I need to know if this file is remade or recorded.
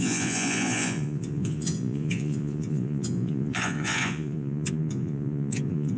remade